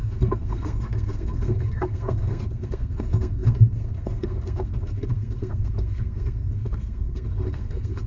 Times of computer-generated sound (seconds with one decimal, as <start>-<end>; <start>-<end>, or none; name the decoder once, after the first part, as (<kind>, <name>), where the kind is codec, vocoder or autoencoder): 0.0-8.1 (codec, SNAC)